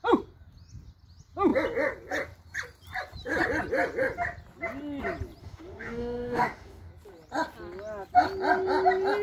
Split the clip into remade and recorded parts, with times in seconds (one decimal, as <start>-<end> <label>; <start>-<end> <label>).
0.0-5.4 recorded; 5.4-6.9 remade; 6.9-9.2 recorded